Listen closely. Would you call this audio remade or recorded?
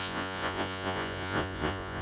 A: remade